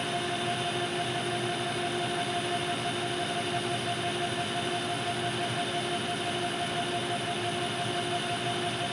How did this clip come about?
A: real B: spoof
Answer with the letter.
A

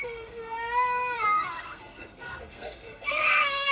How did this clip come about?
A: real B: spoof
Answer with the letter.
B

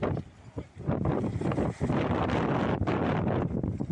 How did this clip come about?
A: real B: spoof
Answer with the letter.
A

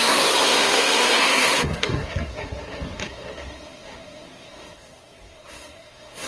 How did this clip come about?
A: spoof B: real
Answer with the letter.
A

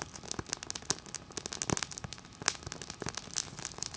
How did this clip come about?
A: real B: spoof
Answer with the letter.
A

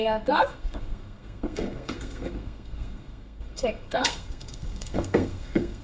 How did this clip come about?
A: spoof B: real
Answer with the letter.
A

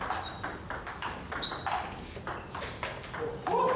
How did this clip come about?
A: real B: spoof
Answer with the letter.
A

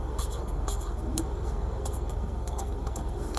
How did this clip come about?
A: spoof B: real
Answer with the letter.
A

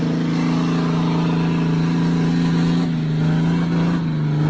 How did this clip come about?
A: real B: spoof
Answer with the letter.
A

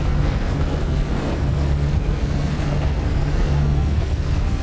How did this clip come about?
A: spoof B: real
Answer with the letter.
A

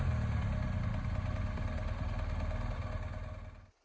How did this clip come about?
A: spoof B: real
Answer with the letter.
B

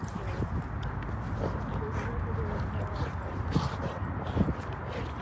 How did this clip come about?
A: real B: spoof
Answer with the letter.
A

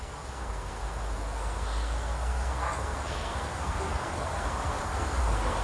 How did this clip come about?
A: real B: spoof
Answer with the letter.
B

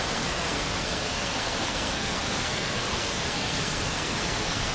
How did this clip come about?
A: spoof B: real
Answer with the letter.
A